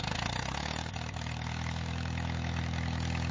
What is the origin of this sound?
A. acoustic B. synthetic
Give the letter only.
B